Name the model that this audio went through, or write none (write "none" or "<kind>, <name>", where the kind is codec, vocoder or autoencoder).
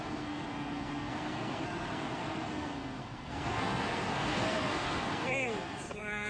codec, SNAC